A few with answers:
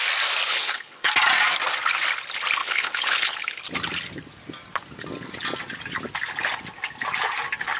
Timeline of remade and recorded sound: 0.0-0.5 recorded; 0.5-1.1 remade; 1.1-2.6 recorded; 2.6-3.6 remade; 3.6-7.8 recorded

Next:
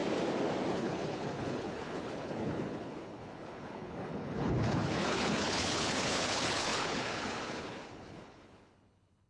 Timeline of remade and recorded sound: 0.0-0.7 recorded; 0.7-9.3 remade

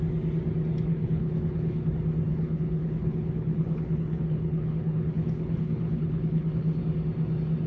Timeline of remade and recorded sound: 0.0-0.9 recorded; 0.9-1.9 remade; 1.9-2.3 recorded; 2.3-6.8 remade; 6.8-7.7 recorded

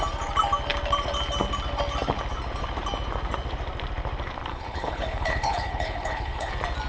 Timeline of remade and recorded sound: 0.0-4.5 recorded; 4.5-6.5 remade; 6.5-6.9 recorded

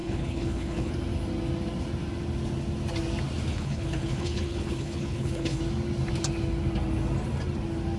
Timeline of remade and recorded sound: 0.0-0.9 remade; 0.9-3.5 recorded; 3.5-5.6 remade; 5.6-8.0 recorded

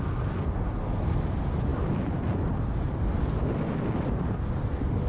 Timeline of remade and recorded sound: 0.0-5.1 recorded